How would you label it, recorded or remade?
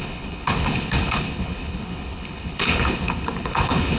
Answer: remade